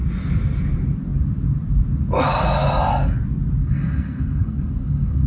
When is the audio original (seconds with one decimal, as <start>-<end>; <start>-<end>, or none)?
0.0-3.6